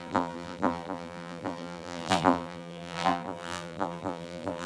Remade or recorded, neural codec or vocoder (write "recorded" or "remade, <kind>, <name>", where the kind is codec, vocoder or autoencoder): remade, vocoder, BigVGAN v2